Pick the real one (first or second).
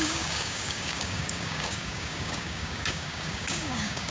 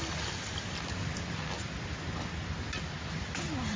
second